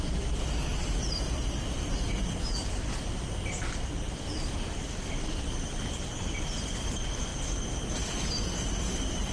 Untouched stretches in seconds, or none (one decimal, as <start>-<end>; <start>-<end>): 3.4-6.6; 7.3-8.3

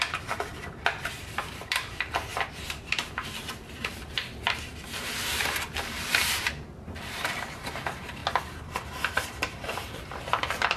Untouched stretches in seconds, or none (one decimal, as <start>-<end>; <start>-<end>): 8.2-9.1

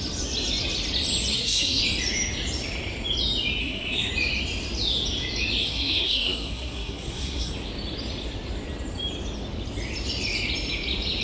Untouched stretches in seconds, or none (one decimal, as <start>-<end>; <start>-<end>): 0.0-1.3; 1.8-3.6; 4.1-5.6; 7.5-11.2

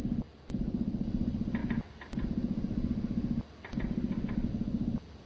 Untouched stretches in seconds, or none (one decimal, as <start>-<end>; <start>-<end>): 0.0-5.3